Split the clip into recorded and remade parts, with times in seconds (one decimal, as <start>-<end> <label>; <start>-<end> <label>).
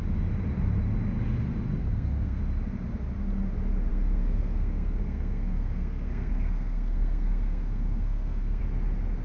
0.0-1.8 recorded; 1.8-2.4 remade; 2.4-3.9 recorded; 3.9-8.6 remade; 8.6-9.2 recorded